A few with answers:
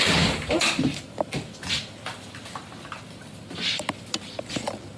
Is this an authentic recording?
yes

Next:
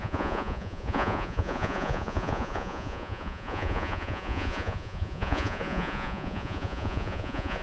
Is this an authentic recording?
no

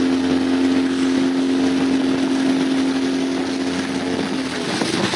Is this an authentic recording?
yes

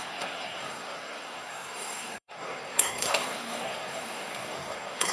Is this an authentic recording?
no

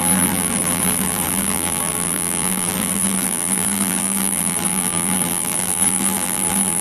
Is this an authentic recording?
no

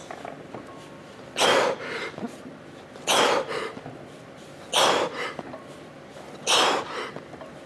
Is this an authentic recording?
yes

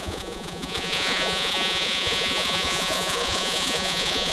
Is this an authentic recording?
no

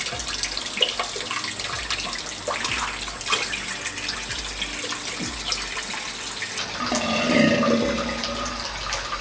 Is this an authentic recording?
yes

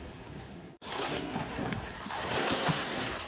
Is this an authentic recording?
no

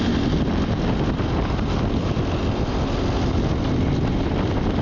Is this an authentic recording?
yes